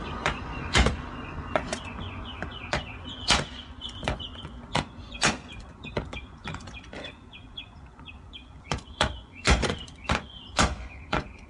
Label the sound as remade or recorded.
remade